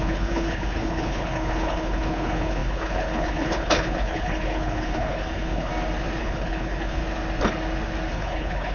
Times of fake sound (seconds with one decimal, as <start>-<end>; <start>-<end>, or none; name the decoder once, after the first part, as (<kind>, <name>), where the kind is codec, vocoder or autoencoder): 0.0-5.7 (codec, HILCodec); 6.2-7.0; 8.1-8.7